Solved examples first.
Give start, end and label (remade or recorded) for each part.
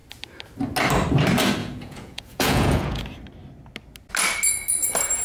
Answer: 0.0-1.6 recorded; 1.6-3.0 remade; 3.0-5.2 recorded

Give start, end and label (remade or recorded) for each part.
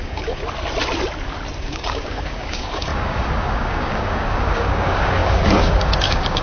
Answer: 0.0-0.4 remade; 0.4-1.6 recorded; 1.6-6.4 remade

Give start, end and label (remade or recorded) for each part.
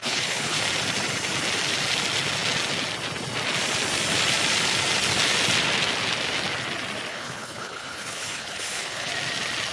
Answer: 0.0-0.6 remade; 0.6-7.1 recorded; 7.1-9.1 remade; 9.1-9.7 recorded